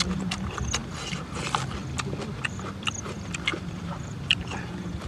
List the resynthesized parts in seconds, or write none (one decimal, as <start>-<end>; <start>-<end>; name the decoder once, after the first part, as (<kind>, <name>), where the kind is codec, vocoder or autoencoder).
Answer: 0.8-1.4 (vocoder, BigVGAN v2); 3.5-5.1